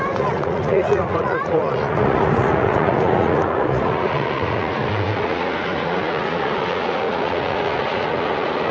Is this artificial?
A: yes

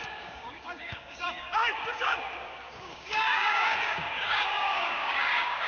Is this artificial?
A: yes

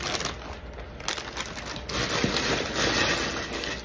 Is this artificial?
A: no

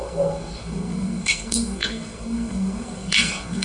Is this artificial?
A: yes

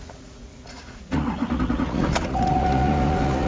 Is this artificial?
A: yes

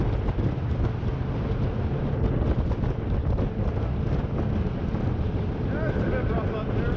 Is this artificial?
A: no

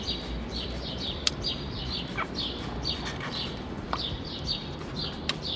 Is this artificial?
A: yes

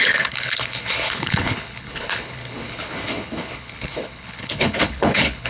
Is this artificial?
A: yes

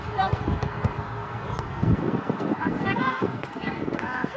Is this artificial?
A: yes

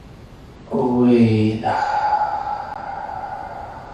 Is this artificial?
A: no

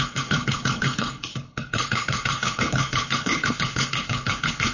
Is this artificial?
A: yes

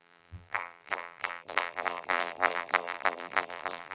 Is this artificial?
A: yes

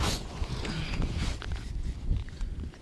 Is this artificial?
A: yes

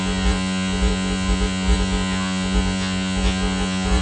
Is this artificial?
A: yes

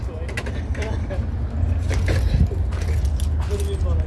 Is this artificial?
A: no